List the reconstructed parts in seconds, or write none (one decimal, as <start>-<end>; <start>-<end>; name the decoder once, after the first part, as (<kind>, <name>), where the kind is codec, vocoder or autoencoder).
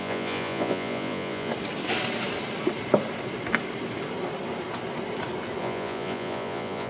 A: 0.0-1.5 (vocoder, Vocos); 5.6-6.9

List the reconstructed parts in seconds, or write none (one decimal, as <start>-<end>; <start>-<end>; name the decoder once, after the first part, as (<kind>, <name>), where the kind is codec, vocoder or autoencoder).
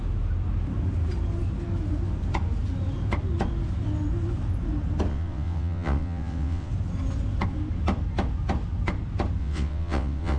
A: 5.1-6.7 (vocoder, WaveNeXt); 9.4-10.4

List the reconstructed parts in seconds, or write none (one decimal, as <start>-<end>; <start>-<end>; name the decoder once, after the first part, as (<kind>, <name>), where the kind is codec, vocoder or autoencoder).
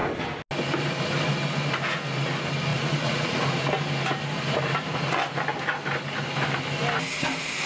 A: 2.7-3.4 (vocoder, Vocos)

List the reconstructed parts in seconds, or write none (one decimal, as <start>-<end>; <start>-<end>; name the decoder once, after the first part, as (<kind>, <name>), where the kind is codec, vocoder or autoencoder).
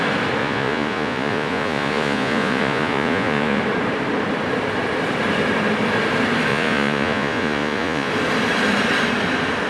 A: 0.4-3.6 (vocoder, Vocos); 6.5-8.1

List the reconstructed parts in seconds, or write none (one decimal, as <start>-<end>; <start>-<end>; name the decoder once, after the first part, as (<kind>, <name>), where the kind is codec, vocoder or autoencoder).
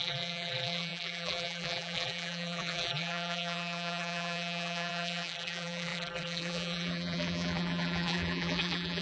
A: 0.0-9.0 (vocoder, BigVGAN v2)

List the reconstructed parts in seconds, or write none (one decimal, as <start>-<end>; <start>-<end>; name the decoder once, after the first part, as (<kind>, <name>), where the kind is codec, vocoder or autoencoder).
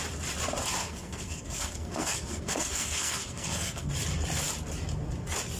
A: 0.8-3.9 (codec, SNAC)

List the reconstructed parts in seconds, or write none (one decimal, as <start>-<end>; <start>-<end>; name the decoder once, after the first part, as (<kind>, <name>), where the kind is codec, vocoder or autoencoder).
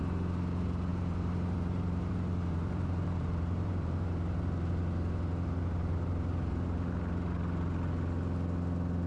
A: 0.9-4.7 (vocoder, BigVGAN v2)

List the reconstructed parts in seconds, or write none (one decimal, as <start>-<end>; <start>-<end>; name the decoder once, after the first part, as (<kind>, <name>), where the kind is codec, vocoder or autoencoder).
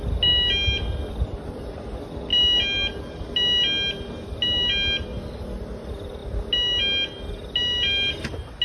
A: none